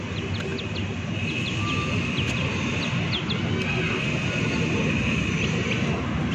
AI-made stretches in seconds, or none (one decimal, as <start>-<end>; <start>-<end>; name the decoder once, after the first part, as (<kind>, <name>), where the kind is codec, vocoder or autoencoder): none